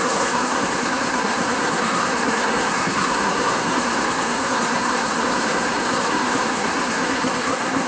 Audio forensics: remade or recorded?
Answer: remade